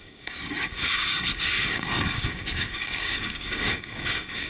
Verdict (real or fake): fake